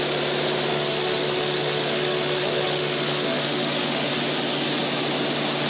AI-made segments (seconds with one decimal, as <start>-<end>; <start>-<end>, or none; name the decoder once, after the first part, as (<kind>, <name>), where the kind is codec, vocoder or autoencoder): 0.7-4.1 (autoencoder, DAC-VAE)